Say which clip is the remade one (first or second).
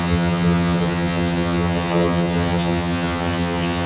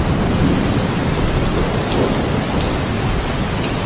first